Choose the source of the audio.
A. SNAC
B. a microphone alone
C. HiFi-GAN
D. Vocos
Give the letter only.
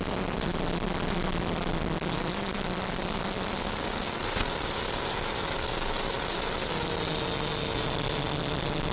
B